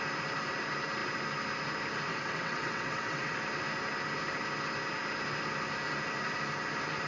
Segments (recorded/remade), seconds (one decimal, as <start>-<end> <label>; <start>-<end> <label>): 0.0-2.1 recorded; 2.1-3.4 remade; 3.4-7.1 recorded